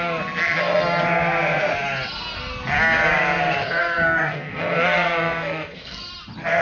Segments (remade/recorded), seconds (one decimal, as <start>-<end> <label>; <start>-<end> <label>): 0.0-3.8 recorded; 3.8-6.1 remade; 6.1-6.6 recorded